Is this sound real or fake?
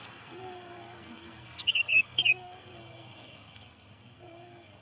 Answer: fake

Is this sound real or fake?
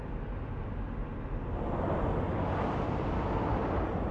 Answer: real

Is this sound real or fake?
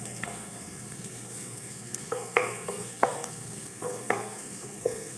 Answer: fake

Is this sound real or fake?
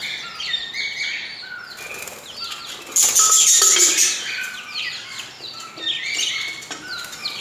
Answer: real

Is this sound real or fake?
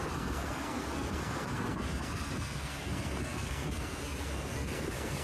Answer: fake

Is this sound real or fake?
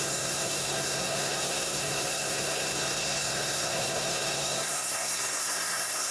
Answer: fake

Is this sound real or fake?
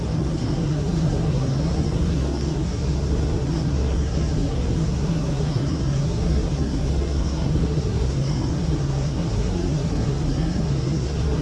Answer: fake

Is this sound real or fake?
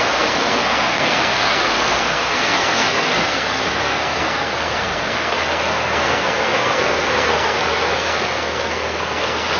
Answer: fake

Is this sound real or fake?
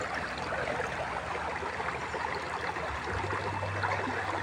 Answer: real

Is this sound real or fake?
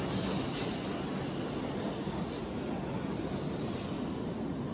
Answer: real